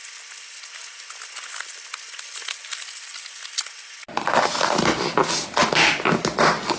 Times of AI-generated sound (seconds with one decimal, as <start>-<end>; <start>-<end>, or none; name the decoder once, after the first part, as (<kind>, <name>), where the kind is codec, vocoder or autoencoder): none